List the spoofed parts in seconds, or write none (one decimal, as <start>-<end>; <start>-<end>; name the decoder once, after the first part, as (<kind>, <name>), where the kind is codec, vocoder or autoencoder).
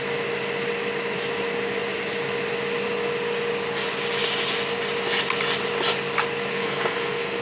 6.5-7.4 (codec, SNAC)